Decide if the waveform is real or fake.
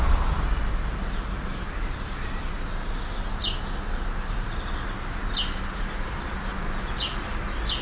real